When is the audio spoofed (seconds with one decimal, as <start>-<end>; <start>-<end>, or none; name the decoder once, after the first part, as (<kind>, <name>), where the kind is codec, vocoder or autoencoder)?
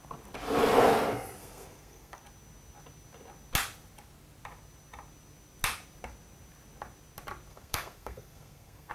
1.4-2.2 (codec, SNAC); 7.5-8.9